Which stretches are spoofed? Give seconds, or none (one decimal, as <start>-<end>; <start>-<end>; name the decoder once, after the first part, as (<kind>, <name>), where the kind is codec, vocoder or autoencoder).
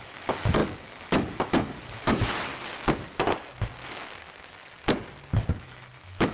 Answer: 0.0-2.5 (autoencoder, DAC-VAE); 5.6-6.3